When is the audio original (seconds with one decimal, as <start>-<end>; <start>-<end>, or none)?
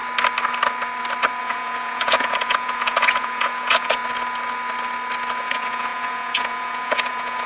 0.0-1.4; 4.0-5.4